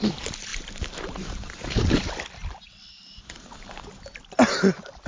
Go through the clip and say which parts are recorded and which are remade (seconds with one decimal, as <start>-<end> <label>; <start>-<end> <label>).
0.0-0.5 recorded; 0.5-2.1 remade; 2.1-2.9 recorded; 2.9-3.9 remade; 3.9-5.1 recorded